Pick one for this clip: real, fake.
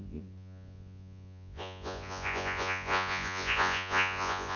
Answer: fake